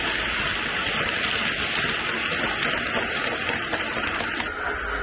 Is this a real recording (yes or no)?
yes